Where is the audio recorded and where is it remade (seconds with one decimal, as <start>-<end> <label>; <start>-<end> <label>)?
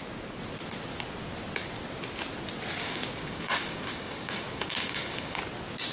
0.0-2.8 recorded; 2.8-5.4 remade; 5.4-5.9 recorded